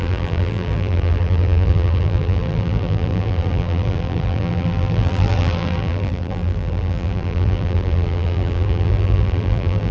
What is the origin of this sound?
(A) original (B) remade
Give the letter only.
B